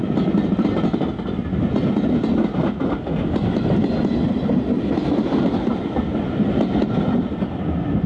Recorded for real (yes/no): yes